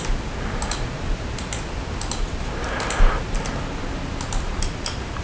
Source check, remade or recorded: recorded